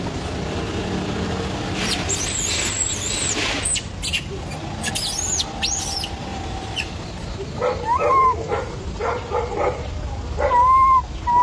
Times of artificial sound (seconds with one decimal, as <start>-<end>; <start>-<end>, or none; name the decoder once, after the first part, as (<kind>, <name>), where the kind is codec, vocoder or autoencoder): 6.3-9.9 (vocoder, BigVGAN v2)